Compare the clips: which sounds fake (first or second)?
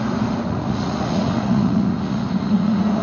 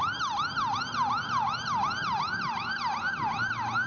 first